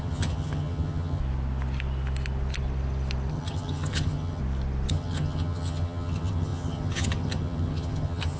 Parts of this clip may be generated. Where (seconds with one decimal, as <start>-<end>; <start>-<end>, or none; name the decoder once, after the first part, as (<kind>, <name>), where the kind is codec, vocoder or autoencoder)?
0.0-1.2 (vocoder, HiFi-GAN); 3.3-4.4; 4.9-8.4